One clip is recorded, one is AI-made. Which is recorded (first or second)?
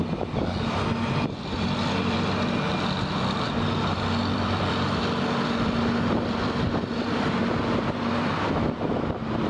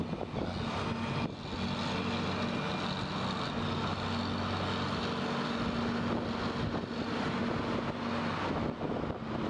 second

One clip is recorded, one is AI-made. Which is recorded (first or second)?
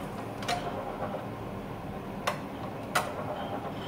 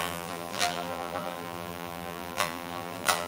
first